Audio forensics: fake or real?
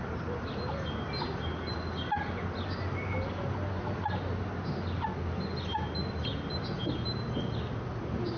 real